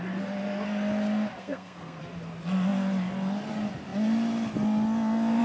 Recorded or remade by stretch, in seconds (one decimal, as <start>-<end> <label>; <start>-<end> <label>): 0.0-1.4 recorded; 1.4-2.0 remade; 2.0-5.4 recorded